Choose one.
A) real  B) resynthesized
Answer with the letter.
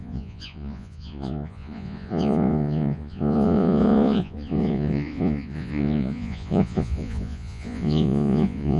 B